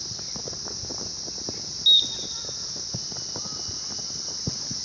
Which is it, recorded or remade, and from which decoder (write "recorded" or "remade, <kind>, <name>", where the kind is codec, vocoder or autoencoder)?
recorded